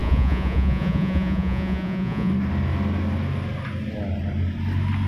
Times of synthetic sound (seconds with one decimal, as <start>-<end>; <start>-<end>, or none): 0.0-2.3